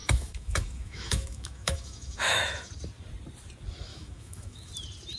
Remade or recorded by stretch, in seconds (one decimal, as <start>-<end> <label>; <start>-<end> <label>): 0.0-2.7 remade; 2.7-3.9 recorded; 3.9-4.7 remade; 4.7-5.2 recorded